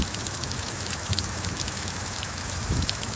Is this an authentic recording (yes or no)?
no